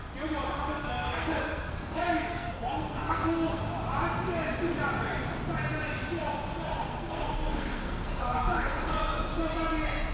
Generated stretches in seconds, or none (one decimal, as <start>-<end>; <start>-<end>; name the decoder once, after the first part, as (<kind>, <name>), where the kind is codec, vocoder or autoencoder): 0.7-3.6 (codec, SNAC); 6.8-9.0